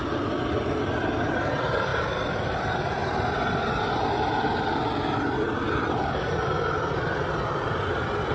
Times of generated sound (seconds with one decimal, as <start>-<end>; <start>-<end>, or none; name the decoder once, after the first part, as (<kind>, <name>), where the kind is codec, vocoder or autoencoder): none